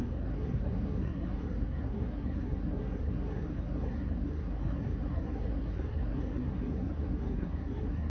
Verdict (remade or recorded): remade